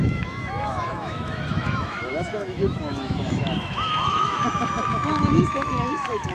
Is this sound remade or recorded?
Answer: remade